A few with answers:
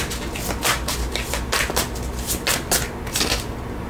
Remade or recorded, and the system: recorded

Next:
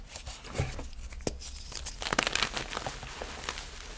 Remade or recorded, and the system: recorded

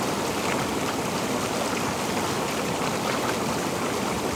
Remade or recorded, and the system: recorded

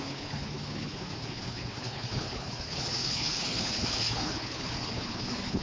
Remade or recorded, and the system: remade, codec, HILCodec